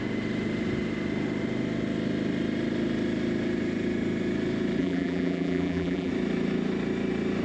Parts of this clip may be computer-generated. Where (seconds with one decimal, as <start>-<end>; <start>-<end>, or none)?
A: 4.8-6.1